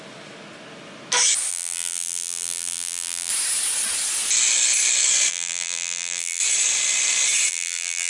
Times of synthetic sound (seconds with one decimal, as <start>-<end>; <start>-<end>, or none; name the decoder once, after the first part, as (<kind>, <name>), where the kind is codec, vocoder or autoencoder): 1.5-3.3 (vocoder, BigVGAN v2); 5.3-6.4; 7.5-8.1